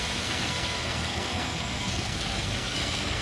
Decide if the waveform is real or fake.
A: fake